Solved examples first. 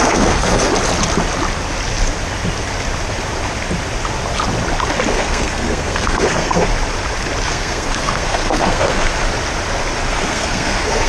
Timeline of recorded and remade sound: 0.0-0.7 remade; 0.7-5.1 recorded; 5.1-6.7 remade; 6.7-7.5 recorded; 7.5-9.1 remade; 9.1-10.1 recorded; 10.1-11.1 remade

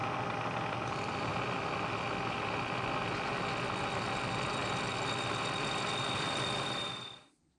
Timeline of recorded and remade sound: 0.0-1.3 recorded; 1.3-3.3 remade; 3.3-4.6 recorded; 4.6-7.6 remade

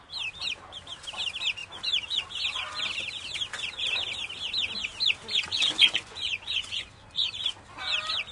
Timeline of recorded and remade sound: 0.0-5.5 recorded; 5.5-7.5 remade; 7.5-8.3 recorded

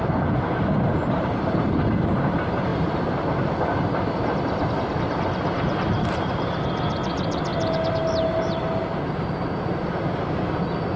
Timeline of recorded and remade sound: 0.0-11.0 recorded